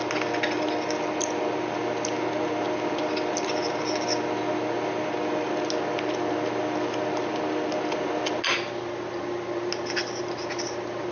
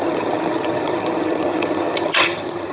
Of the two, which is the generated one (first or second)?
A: second